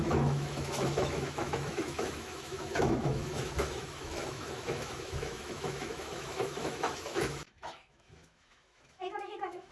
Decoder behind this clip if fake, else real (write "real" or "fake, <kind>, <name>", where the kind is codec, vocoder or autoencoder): fake, autoencoder, DAC-VAE